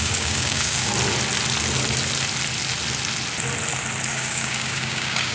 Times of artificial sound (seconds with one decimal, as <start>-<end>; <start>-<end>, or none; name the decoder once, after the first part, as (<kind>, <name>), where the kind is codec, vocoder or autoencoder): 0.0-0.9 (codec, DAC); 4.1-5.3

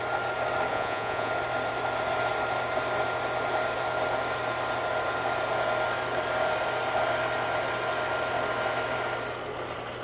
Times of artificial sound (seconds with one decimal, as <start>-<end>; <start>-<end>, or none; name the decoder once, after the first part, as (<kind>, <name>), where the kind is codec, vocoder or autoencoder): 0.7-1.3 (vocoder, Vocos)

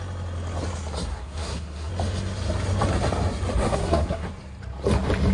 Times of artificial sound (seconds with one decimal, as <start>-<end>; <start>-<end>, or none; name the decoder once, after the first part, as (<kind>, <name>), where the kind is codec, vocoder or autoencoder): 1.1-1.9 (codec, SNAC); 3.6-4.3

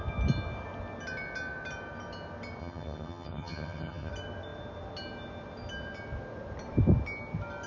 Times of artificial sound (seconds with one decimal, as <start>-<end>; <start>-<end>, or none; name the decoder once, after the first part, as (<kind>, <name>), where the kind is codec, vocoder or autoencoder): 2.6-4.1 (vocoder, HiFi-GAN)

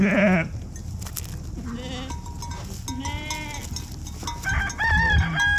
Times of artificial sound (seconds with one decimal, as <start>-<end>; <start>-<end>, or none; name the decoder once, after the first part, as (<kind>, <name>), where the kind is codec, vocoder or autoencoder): none

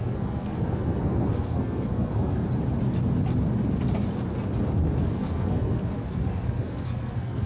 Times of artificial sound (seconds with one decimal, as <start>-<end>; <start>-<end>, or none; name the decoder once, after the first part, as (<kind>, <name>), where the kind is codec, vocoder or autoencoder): 0.0-2.4 (codec, SNAC); 5.0-7.5

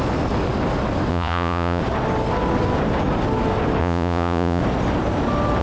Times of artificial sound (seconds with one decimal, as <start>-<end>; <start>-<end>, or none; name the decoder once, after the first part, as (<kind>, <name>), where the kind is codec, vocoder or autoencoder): 1.1-1.8 (vocoder, Vocos); 3.8-4.6